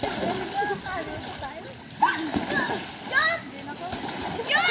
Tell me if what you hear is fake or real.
real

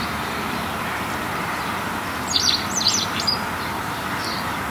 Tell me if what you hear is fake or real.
fake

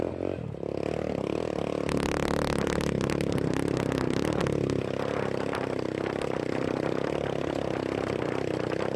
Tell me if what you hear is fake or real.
real